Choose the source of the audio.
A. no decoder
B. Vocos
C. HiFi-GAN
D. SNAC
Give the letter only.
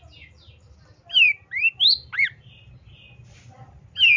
A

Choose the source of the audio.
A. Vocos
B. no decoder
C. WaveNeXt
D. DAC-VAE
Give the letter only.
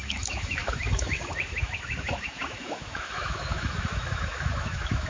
D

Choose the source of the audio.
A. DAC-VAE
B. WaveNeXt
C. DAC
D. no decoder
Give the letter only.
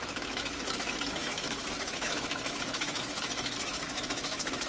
A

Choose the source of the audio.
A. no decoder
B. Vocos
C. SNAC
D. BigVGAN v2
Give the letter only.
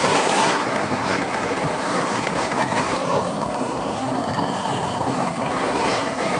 C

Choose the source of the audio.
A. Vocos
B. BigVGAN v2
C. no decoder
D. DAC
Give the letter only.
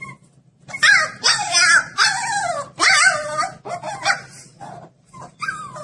B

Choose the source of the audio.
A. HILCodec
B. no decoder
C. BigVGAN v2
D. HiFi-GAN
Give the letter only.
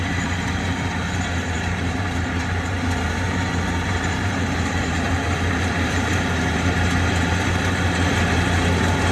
C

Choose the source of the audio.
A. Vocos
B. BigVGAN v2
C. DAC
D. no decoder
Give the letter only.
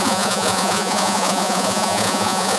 A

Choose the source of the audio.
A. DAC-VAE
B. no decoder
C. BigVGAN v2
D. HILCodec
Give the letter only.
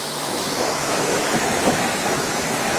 A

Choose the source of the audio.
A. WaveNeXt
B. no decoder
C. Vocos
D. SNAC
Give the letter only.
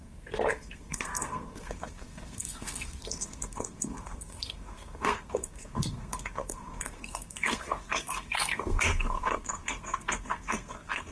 D